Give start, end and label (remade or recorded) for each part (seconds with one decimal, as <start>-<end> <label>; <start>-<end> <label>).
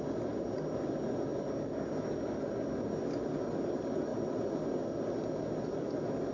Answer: 0.0-6.3 recorded